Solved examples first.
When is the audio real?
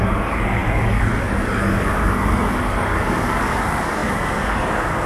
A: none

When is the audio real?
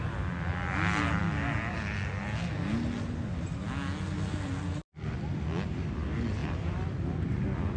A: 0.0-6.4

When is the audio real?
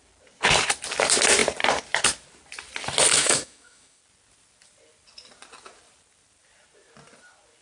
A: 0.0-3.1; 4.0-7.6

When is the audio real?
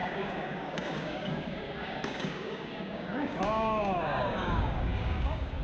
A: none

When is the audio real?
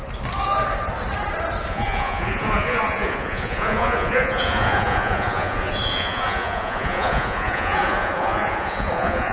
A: 0.0-1.7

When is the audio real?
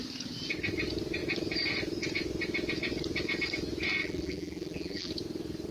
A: 0.0-4.0; 5.1-5.7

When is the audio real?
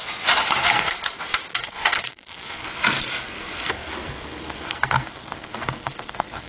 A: 0.0-0.6; 1.2-1.6; 2.7-3.2